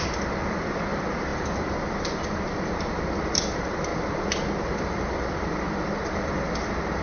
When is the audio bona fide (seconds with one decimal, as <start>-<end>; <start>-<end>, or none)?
0.0-7.0